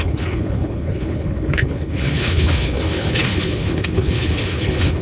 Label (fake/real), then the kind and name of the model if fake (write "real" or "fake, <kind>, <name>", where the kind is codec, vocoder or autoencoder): fake, codec, HILCodec